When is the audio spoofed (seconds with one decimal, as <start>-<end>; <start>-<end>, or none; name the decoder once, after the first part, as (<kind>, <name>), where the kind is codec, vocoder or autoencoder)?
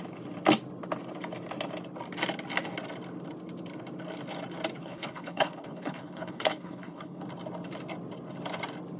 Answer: 4.8-7.2 (codec, HILCodec)